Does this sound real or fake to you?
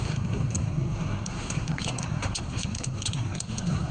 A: fake